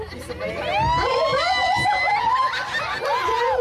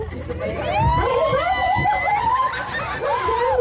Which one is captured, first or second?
first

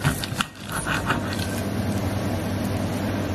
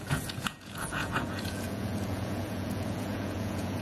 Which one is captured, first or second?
first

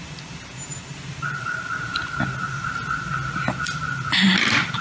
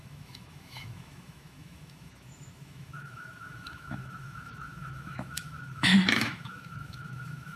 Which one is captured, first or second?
first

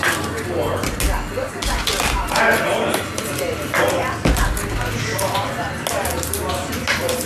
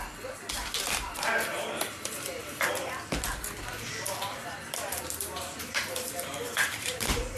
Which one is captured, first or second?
first